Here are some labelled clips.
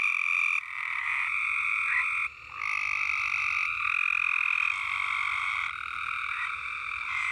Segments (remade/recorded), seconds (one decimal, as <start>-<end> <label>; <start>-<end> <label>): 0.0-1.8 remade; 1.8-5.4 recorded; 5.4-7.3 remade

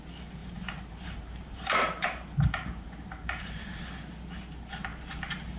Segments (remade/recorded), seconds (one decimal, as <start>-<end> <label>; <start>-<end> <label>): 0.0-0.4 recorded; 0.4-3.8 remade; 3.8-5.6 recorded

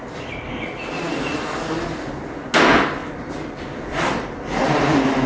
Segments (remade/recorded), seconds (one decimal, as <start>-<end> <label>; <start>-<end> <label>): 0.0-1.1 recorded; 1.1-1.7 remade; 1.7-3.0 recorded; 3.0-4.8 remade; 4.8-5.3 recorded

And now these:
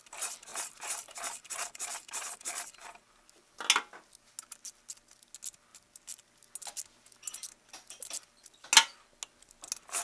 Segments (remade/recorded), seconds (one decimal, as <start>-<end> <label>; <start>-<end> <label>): 0.0-0.5 recorded; 0.5-3.3 remade; 3.3-10.0 recorded

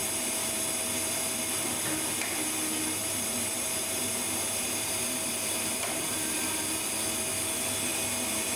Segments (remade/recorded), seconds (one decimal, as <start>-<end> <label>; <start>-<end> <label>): 0.0-0.5 remade; 0.5-3.0 recorded; 3.0-6.6 remade; 6.6-8.6 recorded

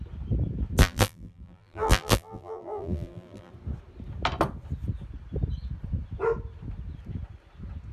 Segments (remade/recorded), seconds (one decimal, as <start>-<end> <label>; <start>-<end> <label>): 0.0-0.8 recorded; 0.8-3.5 remade; 3.5-7.9 recorded